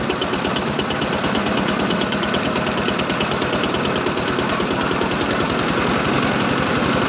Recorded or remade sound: remade